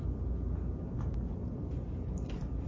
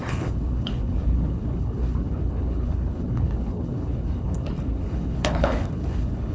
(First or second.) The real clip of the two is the first